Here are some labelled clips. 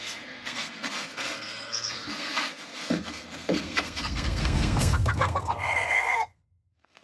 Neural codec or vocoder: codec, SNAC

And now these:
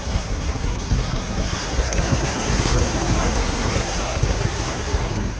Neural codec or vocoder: codec, SNAC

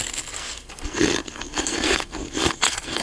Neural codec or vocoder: codec, SNAC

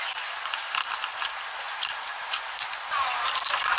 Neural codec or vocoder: none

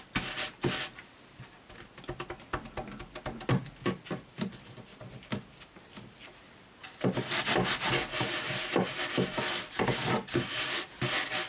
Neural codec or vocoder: none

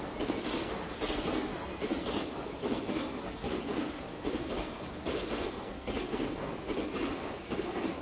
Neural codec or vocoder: codec, SNAC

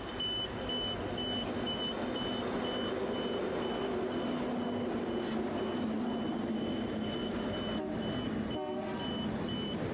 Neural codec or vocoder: none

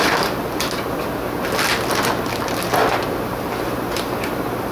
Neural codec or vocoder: none